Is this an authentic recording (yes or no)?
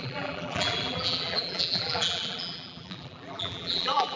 no